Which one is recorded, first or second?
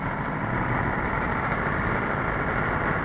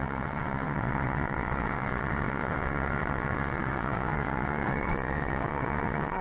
first